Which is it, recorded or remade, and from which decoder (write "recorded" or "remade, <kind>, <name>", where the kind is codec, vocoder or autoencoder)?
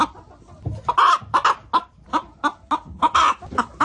recorded